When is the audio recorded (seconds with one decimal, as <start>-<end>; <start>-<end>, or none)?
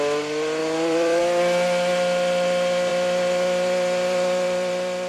0.0-0.6; 1.2-2.9